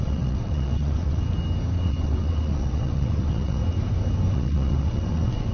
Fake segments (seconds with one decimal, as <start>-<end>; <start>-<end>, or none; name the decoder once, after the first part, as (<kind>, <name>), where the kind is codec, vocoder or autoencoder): 0.0-1.2 (vocoder, WaveNeXt); 1.8-3.6; 4.3-5.5

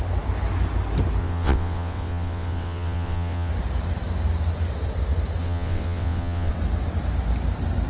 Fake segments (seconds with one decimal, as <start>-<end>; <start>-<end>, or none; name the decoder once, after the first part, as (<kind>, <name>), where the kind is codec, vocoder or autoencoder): 1.2-3.5 (vocoder, WaveNeXt); 5.4-6.5

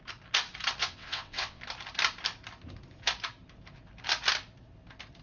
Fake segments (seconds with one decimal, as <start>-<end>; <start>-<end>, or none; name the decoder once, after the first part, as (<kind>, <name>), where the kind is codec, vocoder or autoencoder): 0.8-1.6 (vocoder, WaveNeXt)

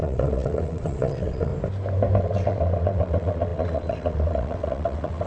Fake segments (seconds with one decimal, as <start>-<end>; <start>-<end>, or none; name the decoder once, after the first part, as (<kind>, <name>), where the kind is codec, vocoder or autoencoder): 0.0-1.5 (vocoder, WaveNeXt); 2.2-5.3

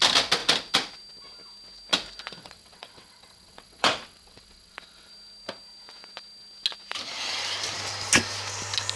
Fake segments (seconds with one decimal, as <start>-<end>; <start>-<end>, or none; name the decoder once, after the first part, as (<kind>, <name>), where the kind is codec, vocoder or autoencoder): 2.4-5.1 (vocoder, WaveNeXt)